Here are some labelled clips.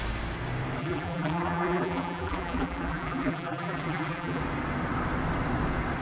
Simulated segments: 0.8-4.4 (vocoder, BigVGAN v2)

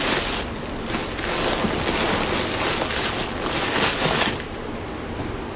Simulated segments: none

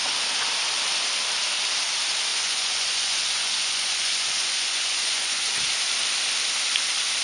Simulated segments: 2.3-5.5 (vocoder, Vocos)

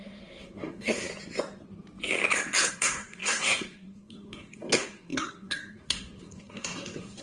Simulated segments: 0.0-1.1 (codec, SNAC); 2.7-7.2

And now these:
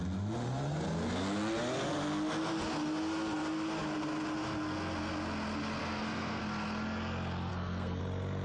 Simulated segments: 5.8-6.4 (codec, SNAC); 7.5-8.0

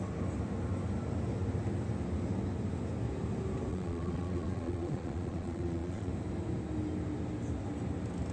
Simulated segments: 3.7-6.1 (vocoder, Vocos)

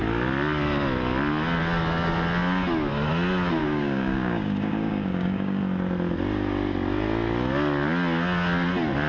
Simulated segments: 3.6-5.6 (codec, DAC)